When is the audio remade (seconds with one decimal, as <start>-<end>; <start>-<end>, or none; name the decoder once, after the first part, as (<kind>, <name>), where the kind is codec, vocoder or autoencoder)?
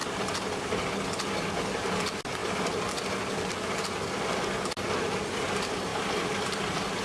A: 5.9-7.0 (vocoder, BigVGAN v2)